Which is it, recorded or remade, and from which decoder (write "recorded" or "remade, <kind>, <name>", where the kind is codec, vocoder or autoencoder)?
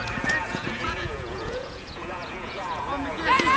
remade, vocoder, Vocos